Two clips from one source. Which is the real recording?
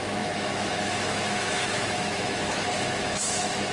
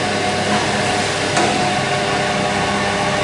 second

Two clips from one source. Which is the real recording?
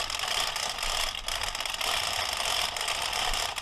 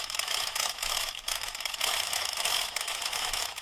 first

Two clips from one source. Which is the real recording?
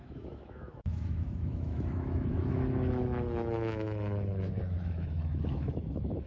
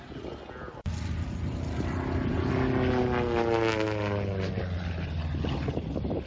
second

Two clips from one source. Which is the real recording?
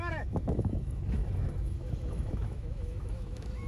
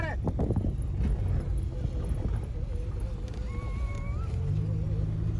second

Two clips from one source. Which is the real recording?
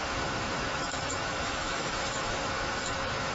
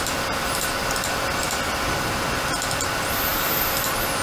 second